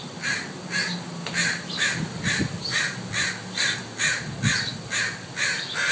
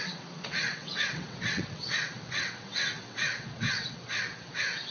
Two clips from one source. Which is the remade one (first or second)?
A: second